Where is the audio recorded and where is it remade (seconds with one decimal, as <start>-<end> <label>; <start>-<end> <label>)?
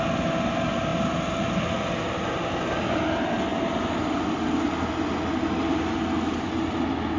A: 0.0-7.2 recorded